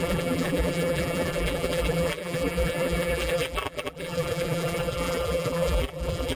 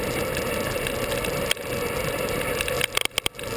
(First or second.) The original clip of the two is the second